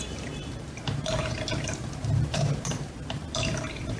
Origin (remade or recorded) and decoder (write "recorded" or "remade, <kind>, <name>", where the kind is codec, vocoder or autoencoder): remade, vocoder, BigVGAN v2